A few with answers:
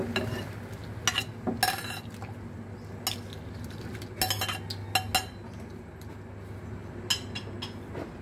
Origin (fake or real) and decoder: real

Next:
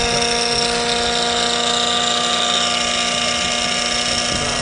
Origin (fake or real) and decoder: real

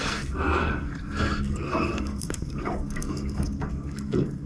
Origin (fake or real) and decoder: fake, codec, SNAC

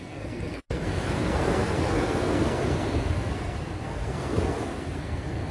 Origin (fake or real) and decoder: fake, codec, SNAC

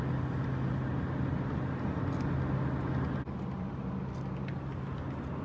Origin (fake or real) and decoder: real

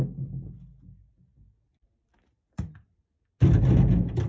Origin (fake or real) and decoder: real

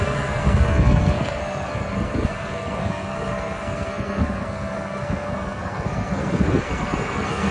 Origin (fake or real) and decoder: fake, codec, SNAC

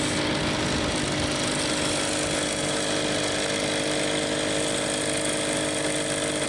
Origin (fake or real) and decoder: real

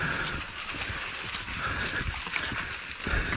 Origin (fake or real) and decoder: real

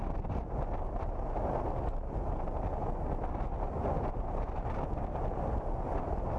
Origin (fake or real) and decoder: real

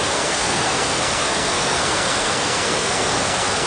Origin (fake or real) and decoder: fake, codec, SNAC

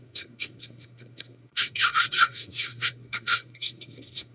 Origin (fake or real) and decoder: fake, codec, SNAC